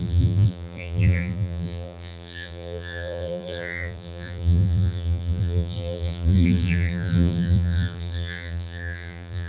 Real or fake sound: fake